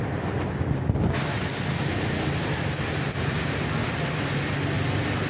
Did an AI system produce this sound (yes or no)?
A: no